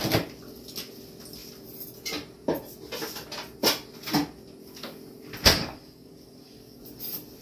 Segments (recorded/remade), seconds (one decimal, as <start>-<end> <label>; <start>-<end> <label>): 0.0-5.5 recorded; 5.5-6.8 remade; 6.8-7.4 recorded